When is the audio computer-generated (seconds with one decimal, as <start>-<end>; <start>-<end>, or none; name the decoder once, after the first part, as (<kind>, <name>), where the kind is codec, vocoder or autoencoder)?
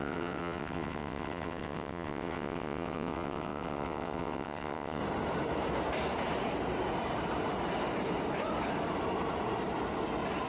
0.0-5.0 (vocoder, WaveNeXt)